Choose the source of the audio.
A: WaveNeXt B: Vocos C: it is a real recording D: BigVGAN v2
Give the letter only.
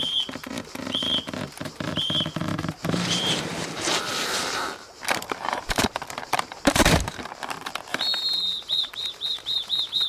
D